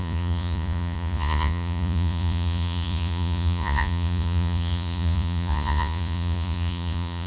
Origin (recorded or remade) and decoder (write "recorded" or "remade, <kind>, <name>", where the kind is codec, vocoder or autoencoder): remade, vocoder, Vocos